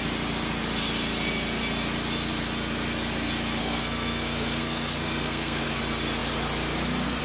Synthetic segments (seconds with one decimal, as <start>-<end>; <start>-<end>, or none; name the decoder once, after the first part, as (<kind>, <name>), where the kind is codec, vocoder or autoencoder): 3.6-5.8 (codec, SNAC)